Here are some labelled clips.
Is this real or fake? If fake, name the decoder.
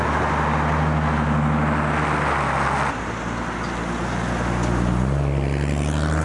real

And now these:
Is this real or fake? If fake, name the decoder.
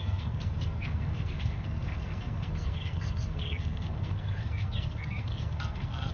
fake, codec, SNAC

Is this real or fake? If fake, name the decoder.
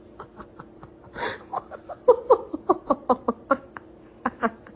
real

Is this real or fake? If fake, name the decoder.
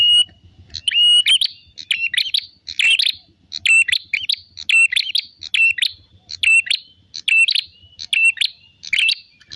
real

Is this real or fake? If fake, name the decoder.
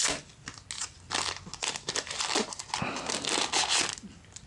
real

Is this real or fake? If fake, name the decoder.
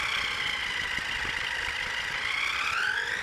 real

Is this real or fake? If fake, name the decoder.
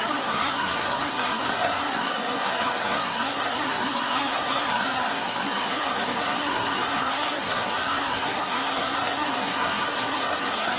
fake, codec, SNAC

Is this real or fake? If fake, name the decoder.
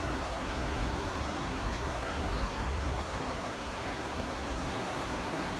fake, codec, SNAC